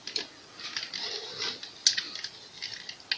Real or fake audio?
real